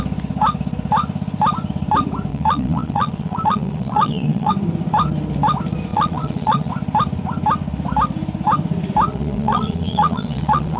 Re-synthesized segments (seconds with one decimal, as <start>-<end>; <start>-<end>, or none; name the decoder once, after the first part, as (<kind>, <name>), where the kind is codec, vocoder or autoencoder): 2.3-4.5 (vocoder, Vocos); 5.9-6.7; 9.1-10.8